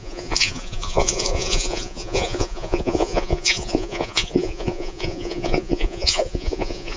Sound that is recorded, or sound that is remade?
remade